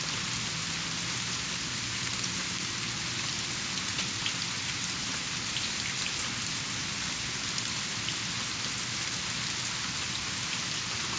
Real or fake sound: real